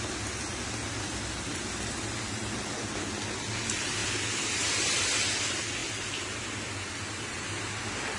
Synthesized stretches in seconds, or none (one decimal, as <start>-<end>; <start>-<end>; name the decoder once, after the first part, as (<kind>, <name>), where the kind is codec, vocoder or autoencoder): none